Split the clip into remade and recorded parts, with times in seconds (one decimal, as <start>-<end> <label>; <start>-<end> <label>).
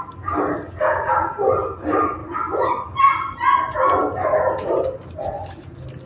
0.0-6.1 recorded